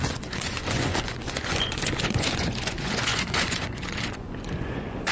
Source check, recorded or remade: remade